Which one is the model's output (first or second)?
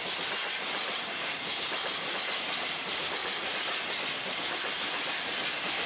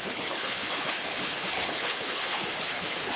second